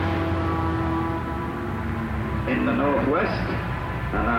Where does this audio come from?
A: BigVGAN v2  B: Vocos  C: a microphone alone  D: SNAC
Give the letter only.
C